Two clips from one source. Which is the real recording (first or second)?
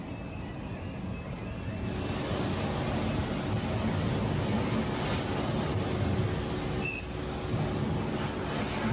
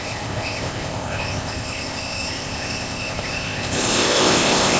first